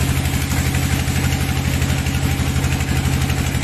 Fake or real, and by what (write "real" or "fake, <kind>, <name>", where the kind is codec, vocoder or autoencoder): real